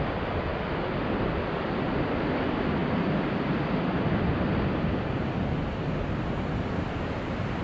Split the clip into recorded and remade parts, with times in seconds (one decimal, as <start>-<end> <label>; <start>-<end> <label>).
0.0-7.6 recorded